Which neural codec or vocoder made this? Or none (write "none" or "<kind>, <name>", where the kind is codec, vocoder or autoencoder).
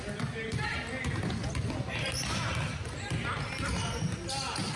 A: none